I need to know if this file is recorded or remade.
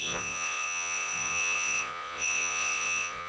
remade